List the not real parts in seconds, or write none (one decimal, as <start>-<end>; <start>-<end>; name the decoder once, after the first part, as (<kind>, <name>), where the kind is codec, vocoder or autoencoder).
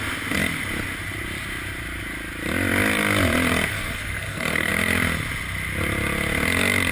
3.7-4.7 (codec, SNAC)